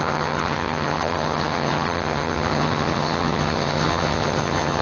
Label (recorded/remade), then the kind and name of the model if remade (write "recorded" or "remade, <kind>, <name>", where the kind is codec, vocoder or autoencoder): remade, vocoder, HiFi-GAN